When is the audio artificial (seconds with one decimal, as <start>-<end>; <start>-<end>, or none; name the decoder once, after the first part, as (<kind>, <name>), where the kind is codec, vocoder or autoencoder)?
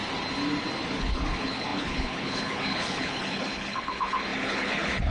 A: 0.9-5.1 (codec, HILCodec)